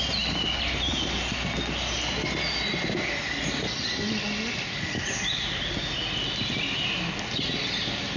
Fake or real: real